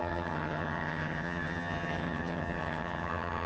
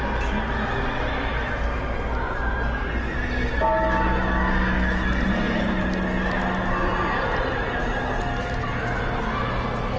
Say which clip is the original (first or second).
second